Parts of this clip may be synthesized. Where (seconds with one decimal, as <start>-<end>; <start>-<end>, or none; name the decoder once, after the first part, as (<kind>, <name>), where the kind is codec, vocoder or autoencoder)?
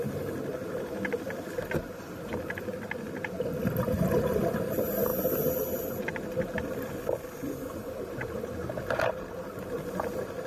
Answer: none